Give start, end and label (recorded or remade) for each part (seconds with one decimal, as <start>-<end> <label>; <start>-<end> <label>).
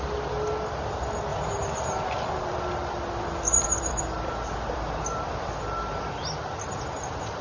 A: 0.0-1.3 recorded; 1.3-5.6 remade; 5.6-7.4 recorded